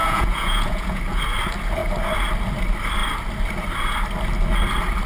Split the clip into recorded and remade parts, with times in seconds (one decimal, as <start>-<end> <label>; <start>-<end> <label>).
0.0-1.0 remade; 1.0-5.1 recorded